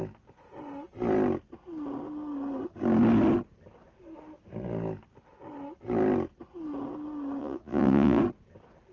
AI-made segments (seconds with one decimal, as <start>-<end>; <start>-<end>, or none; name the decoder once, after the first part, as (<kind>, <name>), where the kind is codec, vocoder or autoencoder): 7.4-8.2 (vocoder, Vocos)